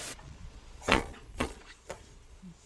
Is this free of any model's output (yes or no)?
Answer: no